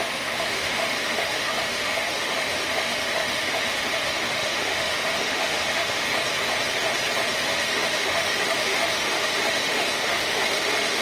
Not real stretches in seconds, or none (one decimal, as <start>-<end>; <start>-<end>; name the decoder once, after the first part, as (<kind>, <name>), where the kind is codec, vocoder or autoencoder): 0.0-6.1 (autoencoder, DAC-VAE); 7.4-11.0